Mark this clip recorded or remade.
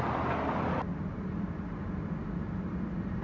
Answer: recorded